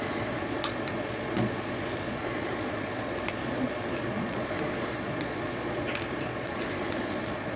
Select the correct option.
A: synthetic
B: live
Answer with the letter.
A